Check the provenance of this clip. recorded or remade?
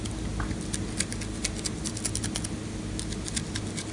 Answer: recorded